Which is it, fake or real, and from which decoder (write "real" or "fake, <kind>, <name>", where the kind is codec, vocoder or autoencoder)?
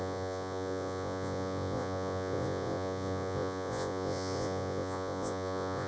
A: fake, vocoder, Vocos